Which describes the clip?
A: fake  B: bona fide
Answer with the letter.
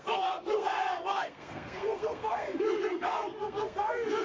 A